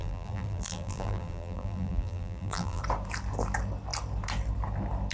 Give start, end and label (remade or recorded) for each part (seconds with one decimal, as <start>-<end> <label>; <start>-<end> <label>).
0.0-2.8 remade; 2.8-5.1 recorded